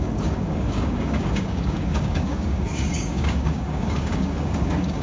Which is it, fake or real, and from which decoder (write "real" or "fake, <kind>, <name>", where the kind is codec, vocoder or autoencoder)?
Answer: fake, codec, DAC